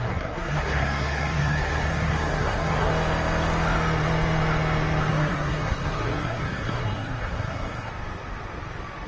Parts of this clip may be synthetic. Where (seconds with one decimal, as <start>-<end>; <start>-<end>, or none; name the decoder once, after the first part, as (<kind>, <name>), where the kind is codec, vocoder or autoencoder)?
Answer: 0.0-2.9 (codec, SNAC); 5.1-7.9